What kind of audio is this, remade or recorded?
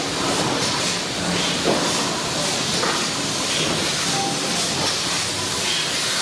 recorded